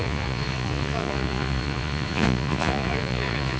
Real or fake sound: fake